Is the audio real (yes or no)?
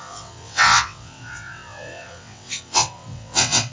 no